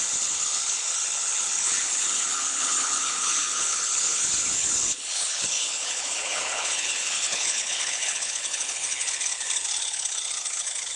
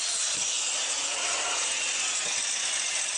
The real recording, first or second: second